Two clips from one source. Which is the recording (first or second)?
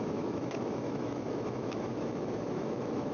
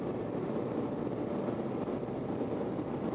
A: second